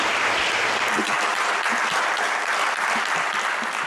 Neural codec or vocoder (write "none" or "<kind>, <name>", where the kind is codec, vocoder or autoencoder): vocoder, BigVGAN v2